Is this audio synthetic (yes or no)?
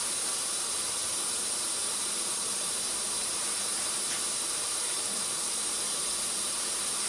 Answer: yes